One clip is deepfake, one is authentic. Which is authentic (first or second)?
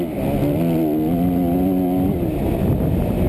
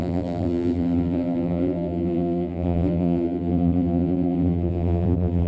first